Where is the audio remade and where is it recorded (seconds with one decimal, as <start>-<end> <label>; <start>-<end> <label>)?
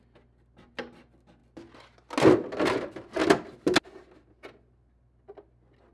0.0-5.9 recorded